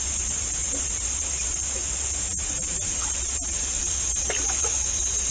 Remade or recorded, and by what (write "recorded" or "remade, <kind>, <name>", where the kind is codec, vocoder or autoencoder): remade, vocoder, BigVGAN v2